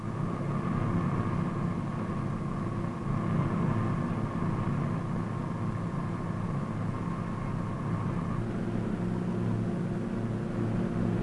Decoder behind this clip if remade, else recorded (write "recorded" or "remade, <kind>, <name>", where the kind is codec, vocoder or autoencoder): recorded